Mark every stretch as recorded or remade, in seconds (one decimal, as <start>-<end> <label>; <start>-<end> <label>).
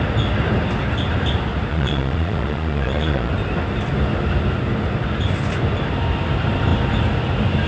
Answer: 0.0-1.7 recorded; 1.7-3.3 remade; 3.3-7.7 recorded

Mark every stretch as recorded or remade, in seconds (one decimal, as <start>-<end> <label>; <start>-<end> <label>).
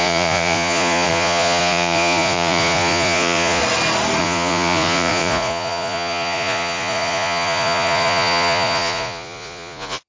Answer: 0.0-3.6 remade; 3.6-4.2 recorded; 4.2-10.1 remade